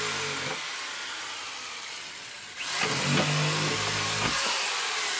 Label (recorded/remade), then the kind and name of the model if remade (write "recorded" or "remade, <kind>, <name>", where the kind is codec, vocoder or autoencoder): recorded